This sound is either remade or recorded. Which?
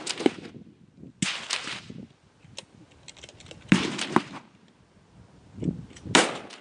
recorded